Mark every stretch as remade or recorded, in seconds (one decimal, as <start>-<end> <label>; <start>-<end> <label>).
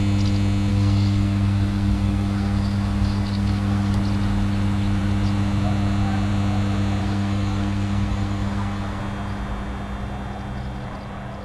0.0-0.7 recorded; 0.7-4.0 remade; 4.0-7.0 recorded; 7.0-9.0 remade; 9.0-11.4 recorded